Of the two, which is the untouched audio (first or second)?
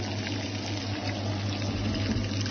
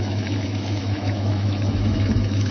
first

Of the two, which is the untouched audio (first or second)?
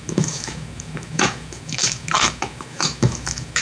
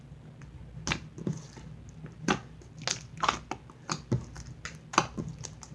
second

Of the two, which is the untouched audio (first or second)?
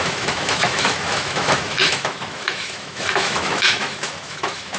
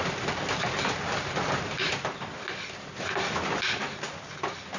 second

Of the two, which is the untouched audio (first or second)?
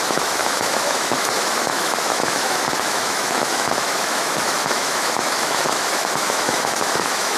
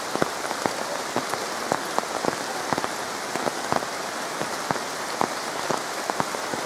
second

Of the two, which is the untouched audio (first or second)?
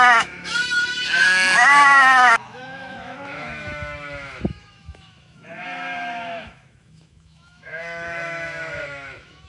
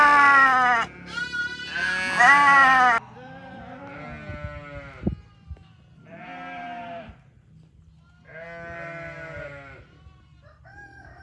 second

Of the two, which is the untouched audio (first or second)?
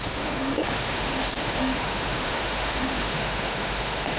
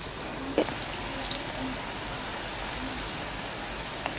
second